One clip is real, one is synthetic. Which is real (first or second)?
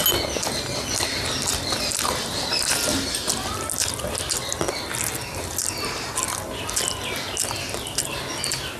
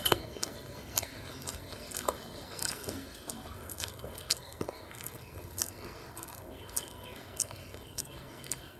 first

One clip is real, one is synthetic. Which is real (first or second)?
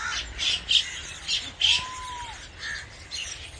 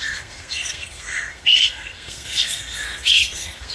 first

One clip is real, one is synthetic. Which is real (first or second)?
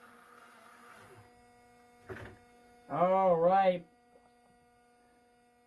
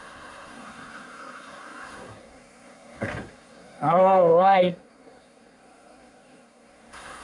first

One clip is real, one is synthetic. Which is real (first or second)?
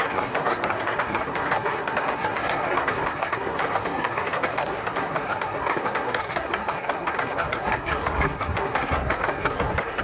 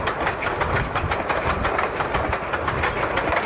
second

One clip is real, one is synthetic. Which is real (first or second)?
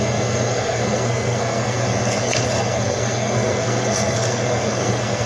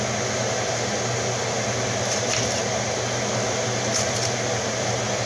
second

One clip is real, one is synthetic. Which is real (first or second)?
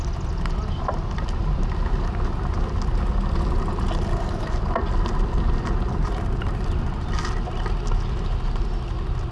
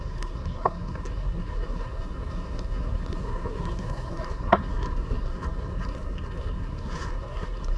first